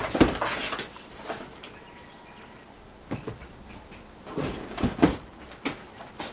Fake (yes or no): yes